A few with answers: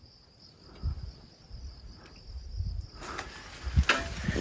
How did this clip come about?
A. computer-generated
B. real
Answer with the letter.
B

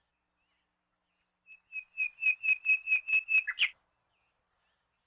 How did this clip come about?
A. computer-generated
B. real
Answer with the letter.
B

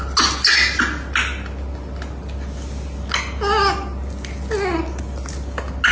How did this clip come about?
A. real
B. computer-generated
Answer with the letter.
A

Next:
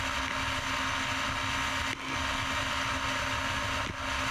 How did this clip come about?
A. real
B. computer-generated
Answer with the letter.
A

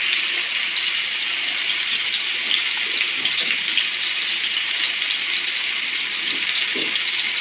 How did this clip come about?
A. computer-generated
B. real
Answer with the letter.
B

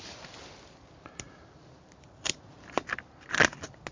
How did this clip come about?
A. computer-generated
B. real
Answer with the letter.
B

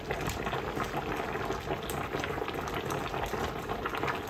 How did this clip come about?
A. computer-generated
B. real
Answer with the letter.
B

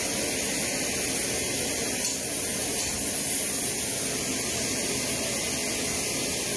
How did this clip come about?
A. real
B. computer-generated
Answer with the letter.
A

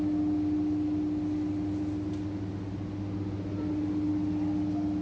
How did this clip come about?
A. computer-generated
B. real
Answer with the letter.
B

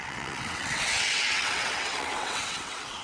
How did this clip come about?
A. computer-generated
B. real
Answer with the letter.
A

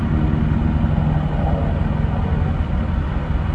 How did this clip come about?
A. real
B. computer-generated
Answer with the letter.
A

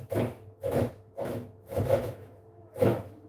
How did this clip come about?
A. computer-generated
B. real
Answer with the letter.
A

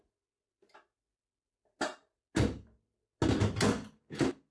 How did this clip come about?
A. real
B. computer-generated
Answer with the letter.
A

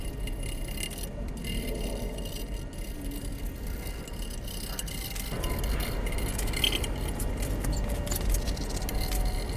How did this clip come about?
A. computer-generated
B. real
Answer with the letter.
B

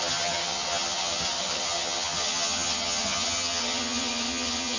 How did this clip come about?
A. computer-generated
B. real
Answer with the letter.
A